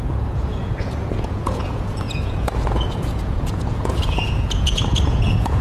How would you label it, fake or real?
fake